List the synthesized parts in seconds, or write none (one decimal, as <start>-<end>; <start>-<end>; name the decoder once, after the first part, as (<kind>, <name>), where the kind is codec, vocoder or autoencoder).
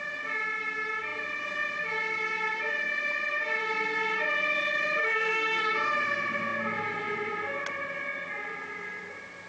5.0-5.6 (codec, SNAC)